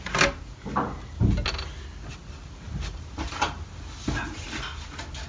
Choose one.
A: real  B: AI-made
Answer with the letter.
A